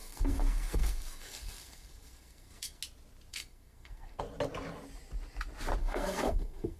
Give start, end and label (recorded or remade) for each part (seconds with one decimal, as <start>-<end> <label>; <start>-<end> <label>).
0.0-2.8 remade; 2.8-3.3 recorded; 3.3-4.2 remade; 4.2-5.8 recorded; 5.8-6.8 remade